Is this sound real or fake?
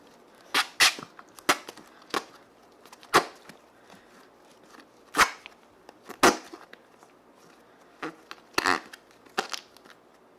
real